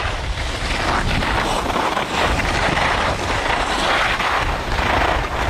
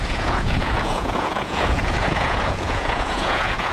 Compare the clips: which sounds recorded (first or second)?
first